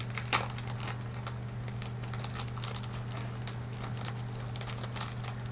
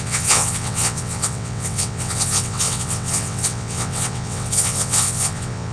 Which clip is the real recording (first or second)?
first